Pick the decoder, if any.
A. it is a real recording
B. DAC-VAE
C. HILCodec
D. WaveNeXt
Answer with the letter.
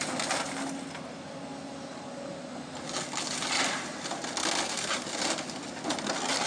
A